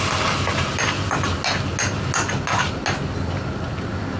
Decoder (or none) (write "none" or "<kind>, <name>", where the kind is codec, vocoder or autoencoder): none